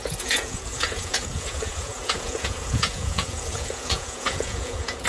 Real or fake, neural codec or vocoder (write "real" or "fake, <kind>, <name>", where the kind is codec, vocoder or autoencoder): fake, vocoder, Vocos